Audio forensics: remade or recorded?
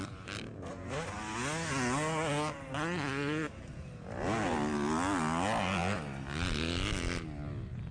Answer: recorded